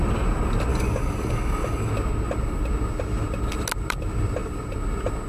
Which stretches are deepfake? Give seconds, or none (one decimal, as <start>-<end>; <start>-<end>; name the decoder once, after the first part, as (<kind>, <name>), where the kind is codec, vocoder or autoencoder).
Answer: 0.7-1.9 (codec, DAC)